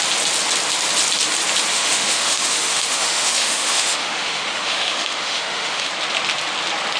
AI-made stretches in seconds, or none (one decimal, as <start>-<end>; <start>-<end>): 1.7-5.9